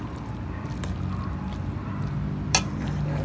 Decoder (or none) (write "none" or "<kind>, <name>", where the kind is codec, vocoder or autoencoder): none